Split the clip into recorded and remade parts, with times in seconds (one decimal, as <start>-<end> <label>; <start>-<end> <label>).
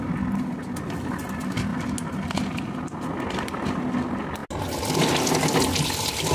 0.0-6.3 recorded